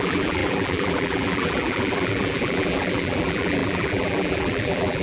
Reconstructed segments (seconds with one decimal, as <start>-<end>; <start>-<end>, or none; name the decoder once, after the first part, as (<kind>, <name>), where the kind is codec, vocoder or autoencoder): 0.0-5.0 (vocoder, BigVGAN v2)